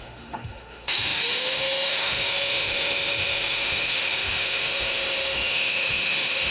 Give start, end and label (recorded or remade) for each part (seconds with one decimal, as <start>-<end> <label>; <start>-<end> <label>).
0.0-6.5 remade